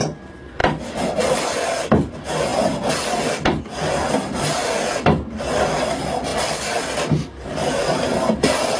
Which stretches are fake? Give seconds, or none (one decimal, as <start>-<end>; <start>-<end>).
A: none

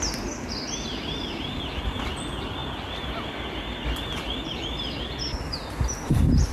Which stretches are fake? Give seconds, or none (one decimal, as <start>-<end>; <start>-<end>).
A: none